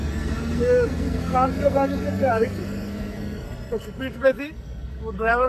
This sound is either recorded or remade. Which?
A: remade